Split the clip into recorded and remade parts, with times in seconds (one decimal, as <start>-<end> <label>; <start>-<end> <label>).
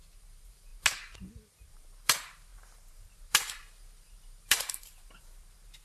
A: 0.0-0.7 remade; 0.7-1.5 recorded; 1.5-5.8 remade